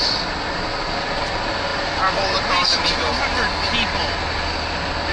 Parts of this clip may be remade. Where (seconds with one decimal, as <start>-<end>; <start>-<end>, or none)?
none